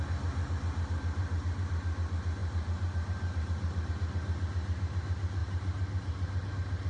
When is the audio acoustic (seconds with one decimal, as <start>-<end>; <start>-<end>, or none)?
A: 0.0-1.2; 1.7-2.4; 3.9-5.4; 6.5-6.9